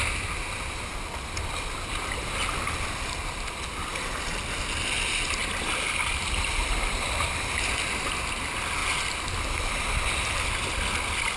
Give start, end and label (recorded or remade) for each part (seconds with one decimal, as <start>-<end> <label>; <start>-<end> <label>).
0.0-11.4 recorded